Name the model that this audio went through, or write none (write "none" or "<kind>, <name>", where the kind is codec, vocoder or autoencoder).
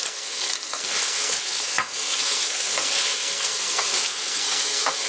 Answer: codec, SNAC